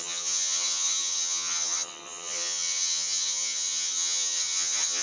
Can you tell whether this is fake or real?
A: fake